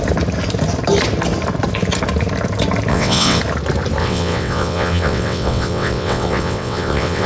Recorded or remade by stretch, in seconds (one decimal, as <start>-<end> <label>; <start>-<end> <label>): 0.0-2.9 recorded; 2.9-3.4 remade; 3.4-4.0 recorded; 4.0-7.3 remade